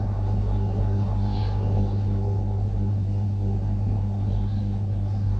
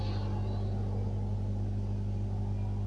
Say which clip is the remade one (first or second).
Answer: first